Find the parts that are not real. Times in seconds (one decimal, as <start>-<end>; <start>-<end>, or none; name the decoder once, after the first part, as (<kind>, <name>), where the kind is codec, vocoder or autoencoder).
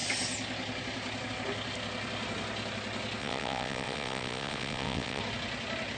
3.2-5.2 (vocoder, WaveNeXt)